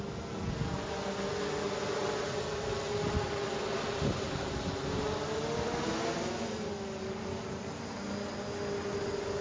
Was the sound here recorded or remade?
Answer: recorded